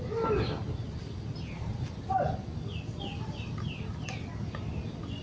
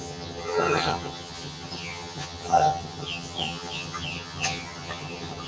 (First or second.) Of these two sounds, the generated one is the second